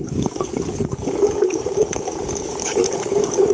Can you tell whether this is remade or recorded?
remade